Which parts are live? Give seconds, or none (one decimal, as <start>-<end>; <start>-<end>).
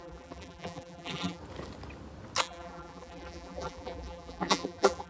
1.4-2.4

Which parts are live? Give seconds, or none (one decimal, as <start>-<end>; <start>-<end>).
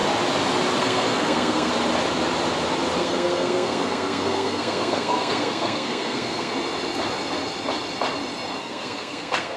0.0-0.8; 1.7-3.0; 6.5-8.6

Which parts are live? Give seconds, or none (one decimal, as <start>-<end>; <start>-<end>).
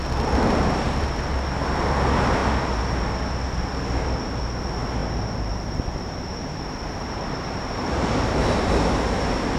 0.0-5.0; 8.6-9.6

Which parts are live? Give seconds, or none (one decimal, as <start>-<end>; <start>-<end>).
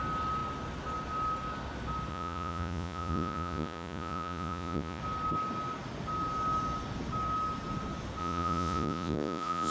0.0-2.1; 5.0-8.2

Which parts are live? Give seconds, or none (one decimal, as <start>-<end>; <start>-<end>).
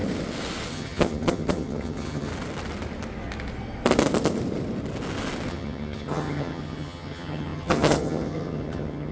0.0-0.7; 2.3-5.5